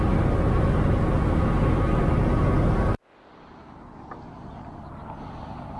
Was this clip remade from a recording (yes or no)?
no